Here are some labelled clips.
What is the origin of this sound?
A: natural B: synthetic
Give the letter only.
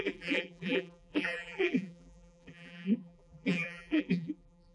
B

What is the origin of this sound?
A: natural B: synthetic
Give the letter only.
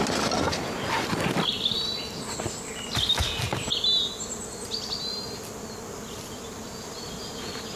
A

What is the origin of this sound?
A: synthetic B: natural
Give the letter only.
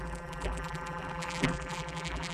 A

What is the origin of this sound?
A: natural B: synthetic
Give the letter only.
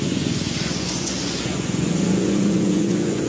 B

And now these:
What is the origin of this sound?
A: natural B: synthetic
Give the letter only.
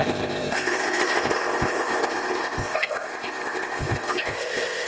B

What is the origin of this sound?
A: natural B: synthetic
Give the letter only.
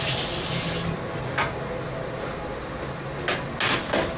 A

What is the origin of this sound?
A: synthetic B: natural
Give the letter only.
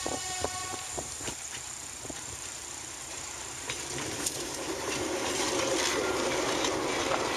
A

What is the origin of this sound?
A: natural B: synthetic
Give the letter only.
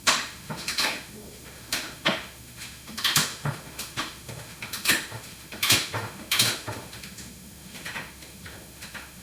B